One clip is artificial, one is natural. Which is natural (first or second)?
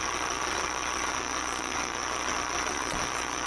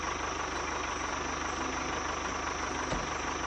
second